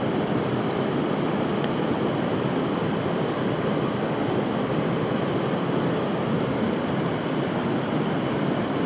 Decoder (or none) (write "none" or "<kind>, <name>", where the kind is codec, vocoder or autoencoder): none